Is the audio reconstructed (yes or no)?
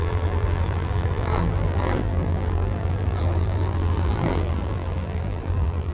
yes